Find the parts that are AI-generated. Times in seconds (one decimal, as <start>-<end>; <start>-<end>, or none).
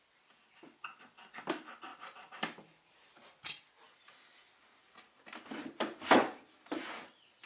none